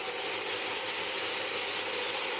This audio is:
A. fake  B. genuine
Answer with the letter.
B